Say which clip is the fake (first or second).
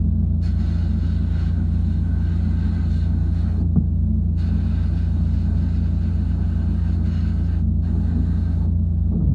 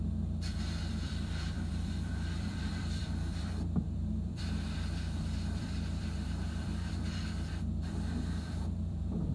second